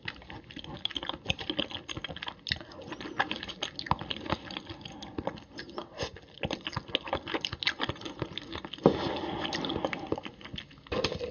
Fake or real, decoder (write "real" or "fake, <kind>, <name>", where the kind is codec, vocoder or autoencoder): real